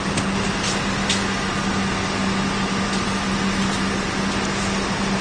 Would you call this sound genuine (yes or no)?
yes